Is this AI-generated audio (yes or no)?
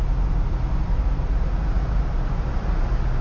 no